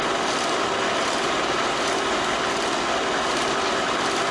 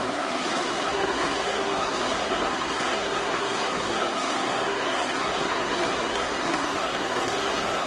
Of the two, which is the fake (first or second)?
second